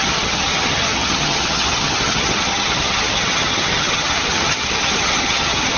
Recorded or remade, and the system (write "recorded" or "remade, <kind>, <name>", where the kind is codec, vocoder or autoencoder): remade, vocoder, HiFi-GAN